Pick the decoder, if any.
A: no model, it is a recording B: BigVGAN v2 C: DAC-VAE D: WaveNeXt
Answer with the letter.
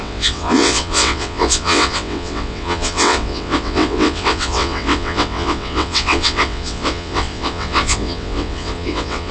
D